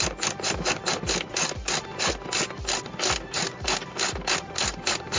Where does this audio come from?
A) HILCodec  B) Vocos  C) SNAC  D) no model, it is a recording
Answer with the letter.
D